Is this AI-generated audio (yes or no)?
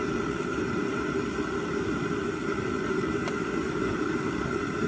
no